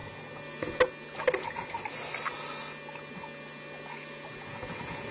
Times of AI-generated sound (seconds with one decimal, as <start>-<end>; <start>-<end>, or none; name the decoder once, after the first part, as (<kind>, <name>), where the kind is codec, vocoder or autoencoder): none